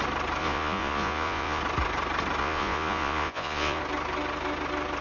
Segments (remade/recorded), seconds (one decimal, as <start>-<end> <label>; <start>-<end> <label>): 0.0-0.4 recorded; 0.4-1.6 remade; 1.6-2.4 recorded; 2.4-3.8 remade; 3.8-5.0 recorded